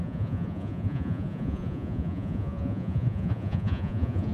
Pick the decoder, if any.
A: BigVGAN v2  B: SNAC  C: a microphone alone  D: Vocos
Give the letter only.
D